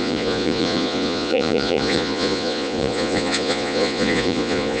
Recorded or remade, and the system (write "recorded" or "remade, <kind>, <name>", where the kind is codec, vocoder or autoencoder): remade, vocoder, Vocos